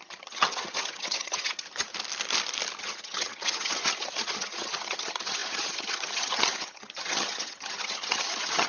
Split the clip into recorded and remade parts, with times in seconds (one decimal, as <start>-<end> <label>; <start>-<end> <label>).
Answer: 0.0-1.9 remade; 1.9-2.8 recorded; 2.8-8.7 remade